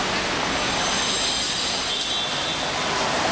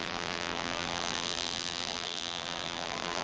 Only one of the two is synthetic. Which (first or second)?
second